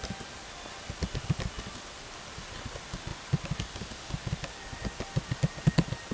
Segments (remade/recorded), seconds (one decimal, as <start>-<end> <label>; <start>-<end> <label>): 0.0-6.1 recorded